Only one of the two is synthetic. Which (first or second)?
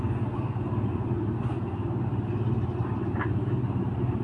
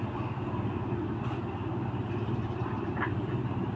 second